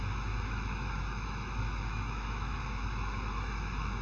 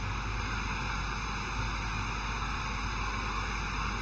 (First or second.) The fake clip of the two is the first